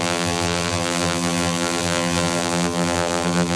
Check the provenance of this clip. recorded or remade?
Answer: remade